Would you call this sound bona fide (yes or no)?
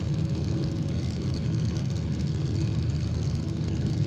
no